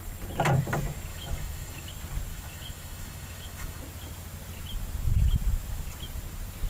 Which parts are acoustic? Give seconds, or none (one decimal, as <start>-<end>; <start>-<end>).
0.0-1.1; 1.9-2.3; 3.8-6.7